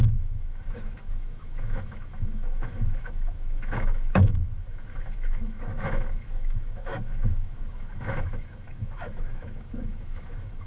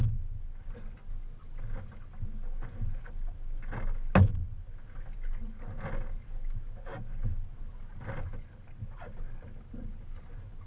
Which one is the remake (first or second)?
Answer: first